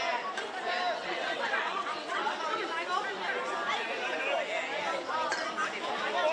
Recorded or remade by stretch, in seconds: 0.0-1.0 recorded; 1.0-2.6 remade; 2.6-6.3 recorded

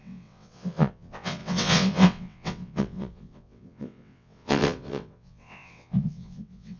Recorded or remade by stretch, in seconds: 0.0-6.8 remade

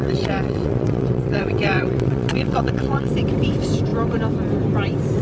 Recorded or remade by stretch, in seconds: 0.0-3.1 remade; 3.1-5.2 recorded

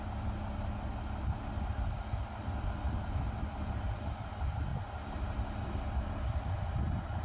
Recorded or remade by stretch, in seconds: 0.0-7.2 recorded